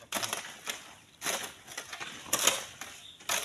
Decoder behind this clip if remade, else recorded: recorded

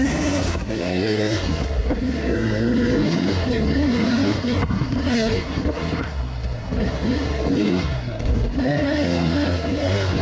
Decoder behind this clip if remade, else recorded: remade, codec, SNAC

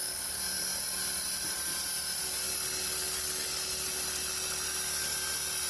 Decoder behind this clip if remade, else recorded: recorded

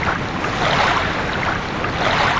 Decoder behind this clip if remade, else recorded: recorded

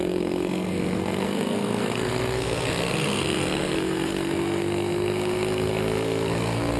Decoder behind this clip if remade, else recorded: remade, codec, SNAC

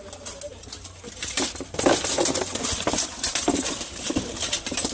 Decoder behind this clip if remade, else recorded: recorded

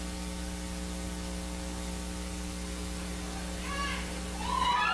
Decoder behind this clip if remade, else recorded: recorded